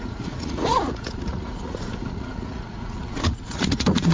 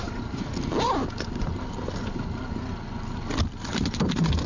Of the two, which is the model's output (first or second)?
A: first